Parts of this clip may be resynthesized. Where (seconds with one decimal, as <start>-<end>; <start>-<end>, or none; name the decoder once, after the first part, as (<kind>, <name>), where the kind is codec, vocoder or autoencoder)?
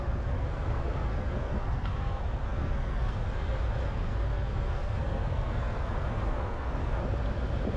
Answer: 0.0-7.0 (codec, SNAC)